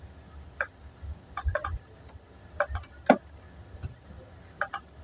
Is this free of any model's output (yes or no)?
yes